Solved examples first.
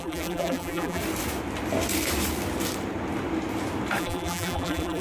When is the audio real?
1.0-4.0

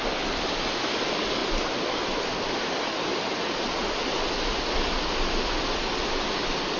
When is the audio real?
0.0-6.8

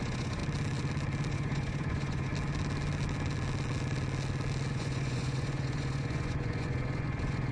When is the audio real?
0.4-1.3; 2.3-4.7

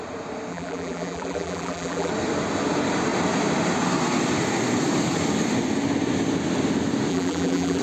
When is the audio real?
0.0-0.5; 2.1-7.1

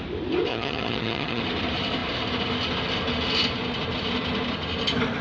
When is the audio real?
0.0-0.5; 1.4-5.2